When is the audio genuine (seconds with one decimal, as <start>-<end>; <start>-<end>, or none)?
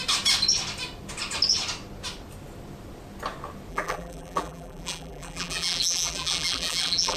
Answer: 0.0-3.7